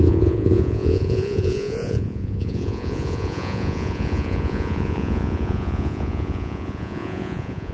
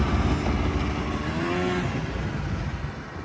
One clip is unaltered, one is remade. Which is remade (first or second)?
first